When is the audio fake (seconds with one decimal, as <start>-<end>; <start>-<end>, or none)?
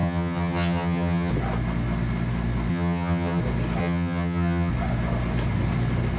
0.0-1.3; 2.7-3.4; 3.8-4.7